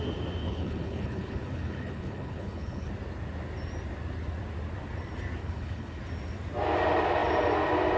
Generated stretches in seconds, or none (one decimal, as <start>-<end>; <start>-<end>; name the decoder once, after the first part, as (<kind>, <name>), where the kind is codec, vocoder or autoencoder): 0.4-2.9 (codec, HILCodec); 5.4-6.0